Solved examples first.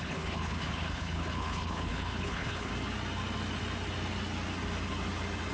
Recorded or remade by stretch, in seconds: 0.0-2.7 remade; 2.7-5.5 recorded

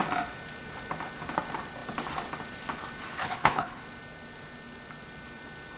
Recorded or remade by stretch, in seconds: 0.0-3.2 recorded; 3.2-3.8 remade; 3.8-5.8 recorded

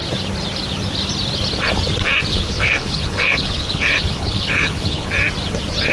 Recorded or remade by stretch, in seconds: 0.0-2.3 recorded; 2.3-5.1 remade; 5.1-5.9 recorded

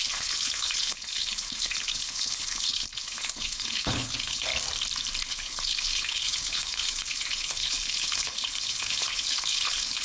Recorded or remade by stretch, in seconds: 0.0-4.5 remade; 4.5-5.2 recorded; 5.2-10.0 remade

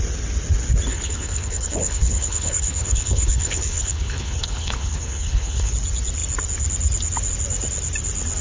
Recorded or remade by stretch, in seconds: 0.0-0.9 recorded; 0.9-5.7 remade; 5.7-8.4 recorded